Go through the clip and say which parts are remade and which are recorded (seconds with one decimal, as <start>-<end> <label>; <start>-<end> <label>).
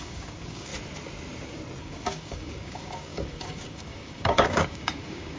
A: 0.0-0.7 remade; 0.7-1.8 recorded; 1.8-5.4 remade